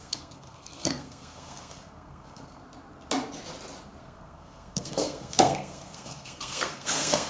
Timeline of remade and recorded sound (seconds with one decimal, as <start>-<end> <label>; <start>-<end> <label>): 0.0-2.6 remade; 2.6-4.0 recorded; 4.0-7.3 remade